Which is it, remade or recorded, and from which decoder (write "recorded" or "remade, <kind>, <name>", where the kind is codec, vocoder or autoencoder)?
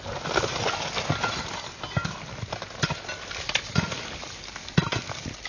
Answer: recorded